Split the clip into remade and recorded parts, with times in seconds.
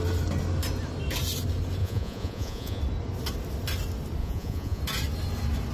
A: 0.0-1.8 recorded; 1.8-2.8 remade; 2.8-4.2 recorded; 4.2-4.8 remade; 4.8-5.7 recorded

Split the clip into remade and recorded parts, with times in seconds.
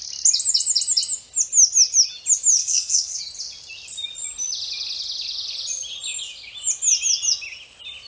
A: 0.0-2.6 recorded; 2.6-3.2 remade; 3.2-8.1 recorded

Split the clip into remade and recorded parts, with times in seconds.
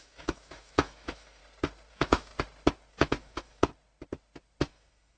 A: 0.0-1.4 remade; 1.4-1.9 recorded; 1.9-2.3 remade; 2.3-2.9 recorded; 2.9-3.7 remade; 3.7-4.7 recorded; 4.7-5.2 remade